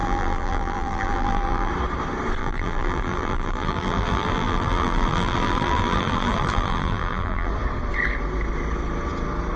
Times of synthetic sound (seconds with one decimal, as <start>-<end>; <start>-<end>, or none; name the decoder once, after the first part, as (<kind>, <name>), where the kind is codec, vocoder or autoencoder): 0.0-1.7 (vocoder, BigVGAN v2); 2.4-7.5